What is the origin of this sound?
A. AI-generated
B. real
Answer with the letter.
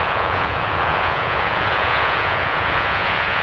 A